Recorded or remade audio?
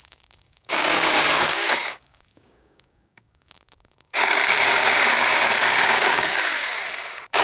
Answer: remade